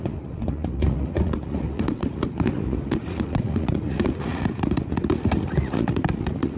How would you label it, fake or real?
fake